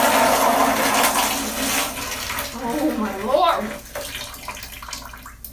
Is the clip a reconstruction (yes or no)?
no